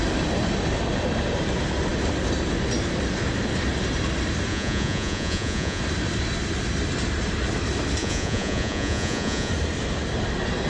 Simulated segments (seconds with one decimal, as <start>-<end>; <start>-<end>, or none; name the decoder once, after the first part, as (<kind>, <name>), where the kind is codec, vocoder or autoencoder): 4.5-5.8 (vocoder, Vocos); 8.0-9.5

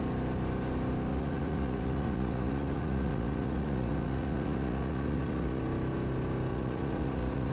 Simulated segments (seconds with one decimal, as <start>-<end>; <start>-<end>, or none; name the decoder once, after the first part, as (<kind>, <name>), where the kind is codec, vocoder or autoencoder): 1.1-5.6 (vocoder, Vocos); 6.5-7.5

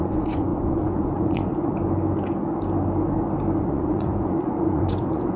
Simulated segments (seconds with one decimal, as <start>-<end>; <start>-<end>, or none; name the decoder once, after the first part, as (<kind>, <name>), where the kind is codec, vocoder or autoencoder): 0.0-1.7 (vocoder, Vocos); 3.6-5.4

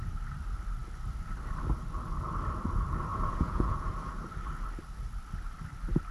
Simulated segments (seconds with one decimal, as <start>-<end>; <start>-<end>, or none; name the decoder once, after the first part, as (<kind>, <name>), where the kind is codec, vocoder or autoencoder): 3.1-4.1 (vocoder, Vocos)

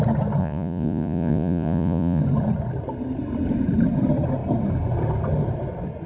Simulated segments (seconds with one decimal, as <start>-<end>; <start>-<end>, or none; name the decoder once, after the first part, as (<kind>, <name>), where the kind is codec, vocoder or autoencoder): 0.4-2.2 (vocoder, Vocos)

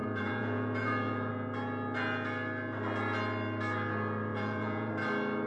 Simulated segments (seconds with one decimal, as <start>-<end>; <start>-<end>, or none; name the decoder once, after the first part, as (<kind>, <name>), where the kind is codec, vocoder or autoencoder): 0.0-1.3 (vocoder, Vocos); 4.3-4.9

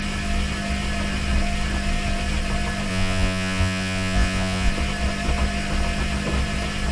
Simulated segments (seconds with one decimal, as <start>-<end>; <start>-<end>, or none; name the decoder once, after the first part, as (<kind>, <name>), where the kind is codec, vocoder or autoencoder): 2.9-4.7 (vocoder, Vocos)

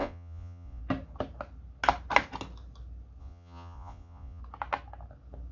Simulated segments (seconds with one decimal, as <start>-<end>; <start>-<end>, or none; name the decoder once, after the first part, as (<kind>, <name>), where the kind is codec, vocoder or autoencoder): 0.0-0.8 (vocoder, Vocos); 3.2-4.4